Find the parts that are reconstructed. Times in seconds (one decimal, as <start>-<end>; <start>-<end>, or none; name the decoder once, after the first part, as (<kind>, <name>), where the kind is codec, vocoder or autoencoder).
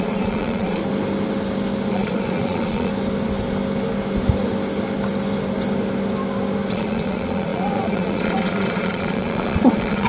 0.0-0.8 (vocoder, Vocos); 1.9-2.9; 6.7-10.1